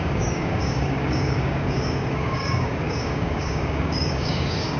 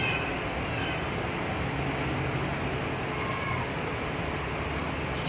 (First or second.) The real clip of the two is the second